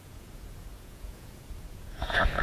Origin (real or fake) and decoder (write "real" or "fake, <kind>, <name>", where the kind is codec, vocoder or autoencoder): fake, vocoder, Vocos